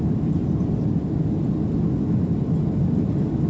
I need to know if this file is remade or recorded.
remade